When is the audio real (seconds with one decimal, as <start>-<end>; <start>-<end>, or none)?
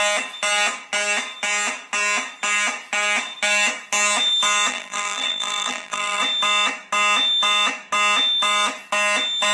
0.0-4.7; 6.2-9.5